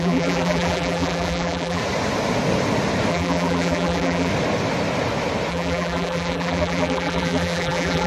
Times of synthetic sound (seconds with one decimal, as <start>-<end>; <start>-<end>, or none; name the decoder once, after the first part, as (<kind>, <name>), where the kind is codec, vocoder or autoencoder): 0.0-1.8 (vocoder, BigVGAN v2); 3.1-4.3; 5.5-8.1